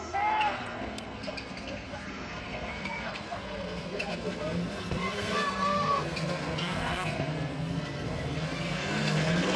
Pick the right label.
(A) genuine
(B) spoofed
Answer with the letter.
B